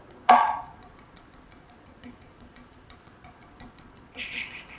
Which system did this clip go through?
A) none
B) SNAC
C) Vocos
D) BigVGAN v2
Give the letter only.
C